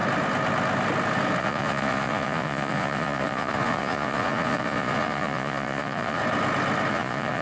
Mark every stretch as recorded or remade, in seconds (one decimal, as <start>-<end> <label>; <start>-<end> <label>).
0.0-1.4 recorded; 1.4-6.2 remade; 6.2-6.9 recorded; 6.9-7.4 remade